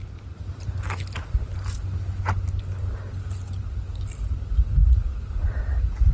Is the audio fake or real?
real